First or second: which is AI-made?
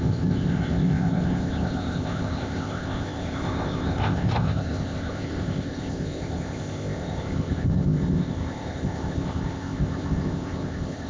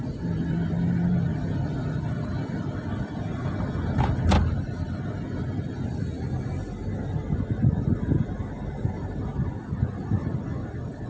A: first